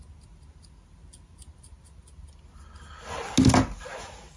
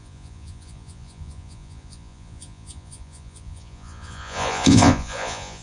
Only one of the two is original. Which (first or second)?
first